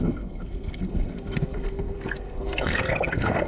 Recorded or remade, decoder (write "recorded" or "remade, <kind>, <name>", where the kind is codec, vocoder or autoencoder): remade, codec, SNAC